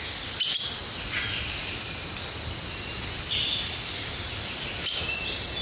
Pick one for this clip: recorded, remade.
recorded